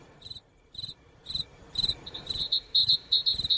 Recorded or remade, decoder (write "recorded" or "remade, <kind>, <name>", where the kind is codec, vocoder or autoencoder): remade, vocoder, BigVGAN v2